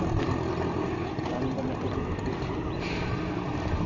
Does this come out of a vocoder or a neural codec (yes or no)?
no